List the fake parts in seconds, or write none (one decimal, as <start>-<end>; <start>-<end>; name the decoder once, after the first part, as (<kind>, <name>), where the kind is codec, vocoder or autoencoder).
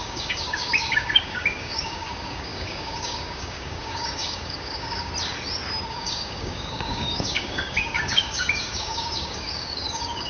0.0-5.1 (codec, DAC); 5.9-10.3